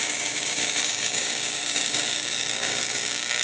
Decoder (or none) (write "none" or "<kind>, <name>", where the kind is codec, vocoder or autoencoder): codec, DAC